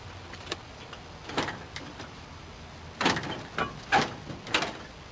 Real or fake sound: real